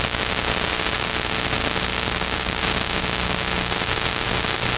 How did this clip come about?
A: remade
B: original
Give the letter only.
B